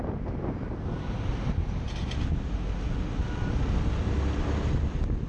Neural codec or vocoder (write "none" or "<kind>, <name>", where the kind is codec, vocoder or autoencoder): none